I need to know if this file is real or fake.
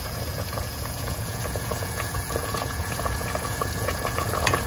fake